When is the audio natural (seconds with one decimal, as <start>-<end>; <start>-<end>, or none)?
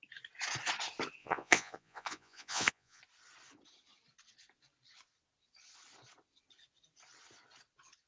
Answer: 0.0-1.2; 3.0-8.1